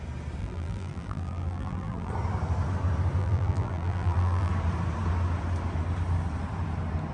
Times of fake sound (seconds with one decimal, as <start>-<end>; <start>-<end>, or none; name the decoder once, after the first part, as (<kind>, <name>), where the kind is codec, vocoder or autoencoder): 0.4-2.1 (vocoder, BigVGAN v2); 3.2-4.5